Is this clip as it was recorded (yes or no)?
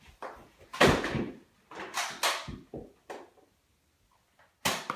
yes